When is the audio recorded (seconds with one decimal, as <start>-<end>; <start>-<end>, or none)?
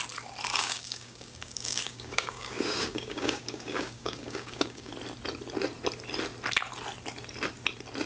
0.0-0.5; 4.9-8.1